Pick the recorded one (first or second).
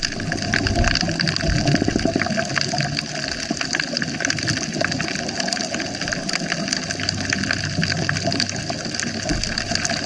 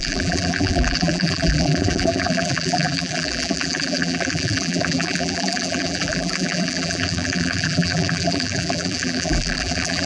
first